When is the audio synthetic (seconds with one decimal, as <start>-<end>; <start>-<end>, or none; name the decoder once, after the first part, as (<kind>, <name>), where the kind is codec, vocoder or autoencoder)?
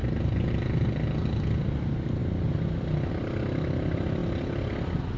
none